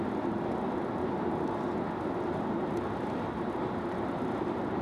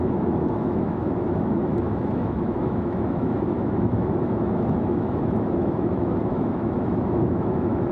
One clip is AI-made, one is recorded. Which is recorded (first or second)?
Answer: first